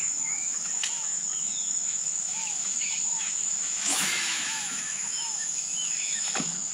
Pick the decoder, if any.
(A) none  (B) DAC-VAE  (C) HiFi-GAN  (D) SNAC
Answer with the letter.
B